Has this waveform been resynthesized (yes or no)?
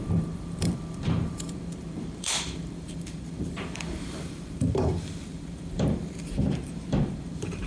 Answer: yes